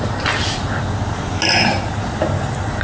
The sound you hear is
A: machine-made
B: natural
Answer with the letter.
B